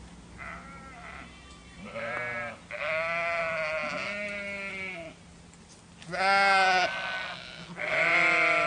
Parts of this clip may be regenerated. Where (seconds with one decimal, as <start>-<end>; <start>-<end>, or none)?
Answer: none